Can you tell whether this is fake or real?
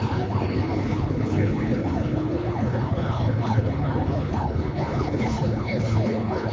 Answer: fake